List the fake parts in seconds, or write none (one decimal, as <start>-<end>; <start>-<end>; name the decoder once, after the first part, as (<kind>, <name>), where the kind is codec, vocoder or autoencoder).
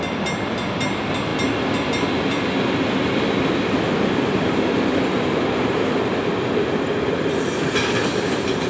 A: none